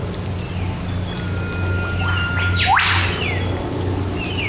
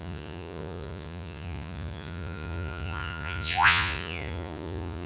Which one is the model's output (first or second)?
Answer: second